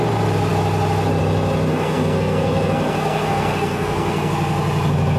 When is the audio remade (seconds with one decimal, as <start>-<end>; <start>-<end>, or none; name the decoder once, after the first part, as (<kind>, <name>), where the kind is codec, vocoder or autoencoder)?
1.7-4.3 (codec, SNAC)